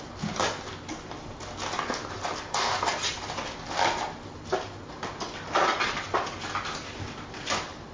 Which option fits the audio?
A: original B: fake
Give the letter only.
A